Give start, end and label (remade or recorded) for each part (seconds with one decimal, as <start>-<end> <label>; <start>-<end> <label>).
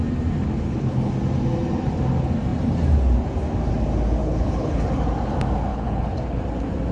0.0-0.4 recorded; 0.4-1.1 remade; 1.1-4.2 recorded; 4.2-4.8 remade; 4.8-5.7 recorded; 5.7-6.4 remade; 6.4-6.9 recorded